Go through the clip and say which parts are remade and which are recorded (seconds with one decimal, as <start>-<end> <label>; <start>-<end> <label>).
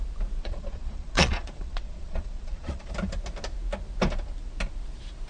0.0-0.4 recorded; 0.4-2.9 remade; 2.9-5.3 recorded